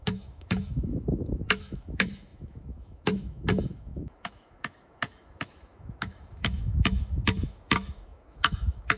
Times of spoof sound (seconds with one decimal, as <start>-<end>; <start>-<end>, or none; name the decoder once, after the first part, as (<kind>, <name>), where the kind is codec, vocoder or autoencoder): 0.0-9.0 (autoencoder, DAC-VAE)